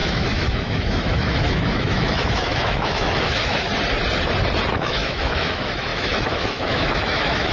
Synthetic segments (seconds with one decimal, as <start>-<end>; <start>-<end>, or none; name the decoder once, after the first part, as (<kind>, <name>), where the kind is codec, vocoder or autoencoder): 0.0-3.7 (autoencoder, DAC-VAE); 4.7-7.5